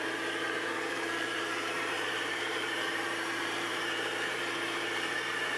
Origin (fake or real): fake